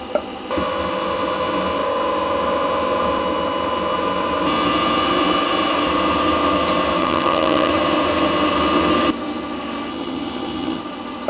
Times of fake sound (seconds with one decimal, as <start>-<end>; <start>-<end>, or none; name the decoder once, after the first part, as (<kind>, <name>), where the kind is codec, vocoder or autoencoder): 7.0-7.7 (vocoder, HiFi-GAN); 9.9-10.8

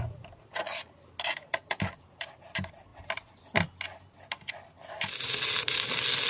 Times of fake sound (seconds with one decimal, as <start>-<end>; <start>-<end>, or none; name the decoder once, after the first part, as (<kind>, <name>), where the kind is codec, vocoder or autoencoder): none

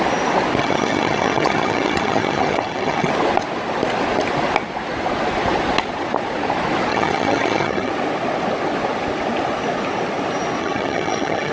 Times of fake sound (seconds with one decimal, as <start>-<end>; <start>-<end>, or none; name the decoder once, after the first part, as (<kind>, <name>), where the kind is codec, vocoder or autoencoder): 0.6-3.1 (vocoder, HiFi-GAN); 6.9-7.9; 10.6-11.5

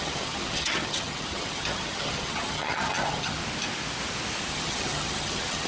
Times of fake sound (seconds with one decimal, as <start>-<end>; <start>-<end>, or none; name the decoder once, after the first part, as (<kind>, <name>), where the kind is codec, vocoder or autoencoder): 0.0-3.4 (vocoder, HiFi-GAN); 4.5-5.7

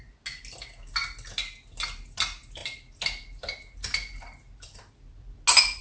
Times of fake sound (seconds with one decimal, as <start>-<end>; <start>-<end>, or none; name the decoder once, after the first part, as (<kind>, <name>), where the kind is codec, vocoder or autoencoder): none

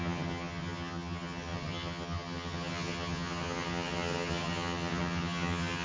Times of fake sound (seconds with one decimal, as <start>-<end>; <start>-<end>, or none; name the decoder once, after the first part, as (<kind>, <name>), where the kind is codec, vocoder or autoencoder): 0.0-5.8 (vocoder, HiFi-GAN)

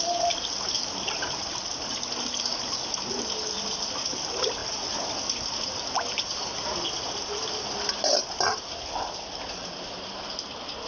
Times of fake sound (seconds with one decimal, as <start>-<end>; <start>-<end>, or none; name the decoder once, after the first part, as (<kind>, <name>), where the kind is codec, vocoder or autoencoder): none